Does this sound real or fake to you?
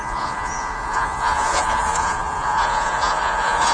fake